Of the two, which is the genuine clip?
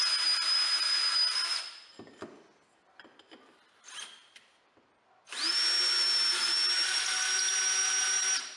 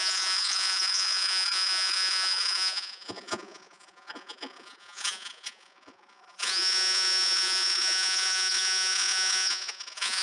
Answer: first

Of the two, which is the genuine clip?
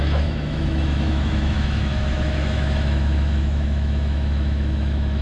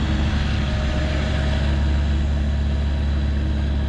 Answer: second